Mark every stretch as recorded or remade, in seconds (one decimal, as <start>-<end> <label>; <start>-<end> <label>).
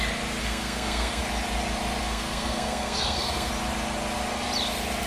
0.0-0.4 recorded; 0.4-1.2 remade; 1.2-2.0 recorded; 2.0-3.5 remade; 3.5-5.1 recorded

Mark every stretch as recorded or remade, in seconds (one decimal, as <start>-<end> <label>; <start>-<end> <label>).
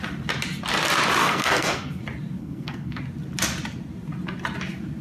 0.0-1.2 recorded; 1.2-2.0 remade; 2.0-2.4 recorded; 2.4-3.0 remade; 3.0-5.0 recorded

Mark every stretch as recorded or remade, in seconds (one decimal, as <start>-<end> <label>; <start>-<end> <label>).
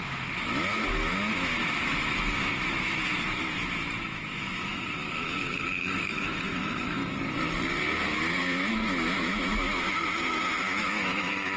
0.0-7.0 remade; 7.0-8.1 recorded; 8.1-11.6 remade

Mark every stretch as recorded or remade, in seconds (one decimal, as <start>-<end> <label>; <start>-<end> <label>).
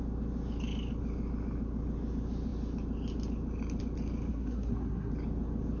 0.0-4.3 recorded; 4.3-5.1 remade; 5.1-5.8 recorded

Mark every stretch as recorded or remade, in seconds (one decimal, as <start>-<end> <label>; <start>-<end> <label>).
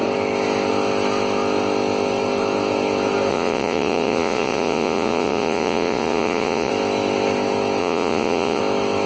0.0-3.3 recorded; 3.3-6.7 remade; 6.7-7.8 recorded; 7.8-8.6 remade; 8.6-9.1 recorded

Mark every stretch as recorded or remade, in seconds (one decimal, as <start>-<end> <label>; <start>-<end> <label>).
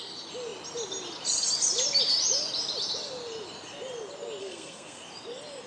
0.0-4.4 recorded; 4.4-5.0 remade; 5.0-5.7 recorded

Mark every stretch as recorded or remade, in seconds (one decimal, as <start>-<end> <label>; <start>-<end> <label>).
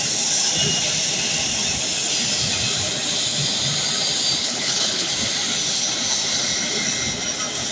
0.0-4.4 recorded; 4.4-5.1 remade; 5.1-7.7 recorded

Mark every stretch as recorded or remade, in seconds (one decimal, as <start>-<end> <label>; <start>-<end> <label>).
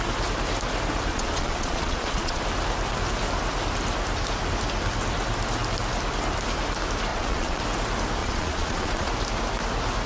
0.0-1.1 recorded; 1.1-2.4 remade; 2.4-7.1 recorded; 7.1-7.6 remade; 7.6-8.2 recorded; 8.2-9.1 remade; 9.1-10.1 recorded